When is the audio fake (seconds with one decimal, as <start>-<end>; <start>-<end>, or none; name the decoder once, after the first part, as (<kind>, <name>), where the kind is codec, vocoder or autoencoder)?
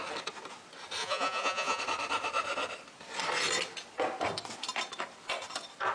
1.0-1.8 (vocoder, Vocos)